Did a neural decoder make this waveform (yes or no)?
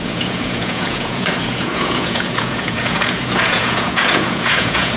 yes